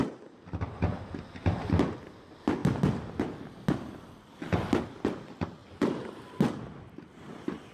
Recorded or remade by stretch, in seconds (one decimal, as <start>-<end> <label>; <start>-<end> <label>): 0.0-7.7 recorded